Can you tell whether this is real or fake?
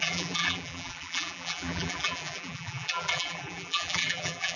fake